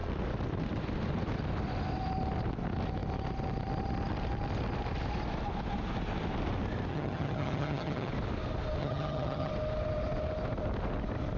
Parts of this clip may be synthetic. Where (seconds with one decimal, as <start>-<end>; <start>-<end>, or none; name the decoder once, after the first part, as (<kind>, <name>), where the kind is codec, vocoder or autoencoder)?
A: 6.9-8.1 (vocoder, HiFi-GAN); 8.8-9.5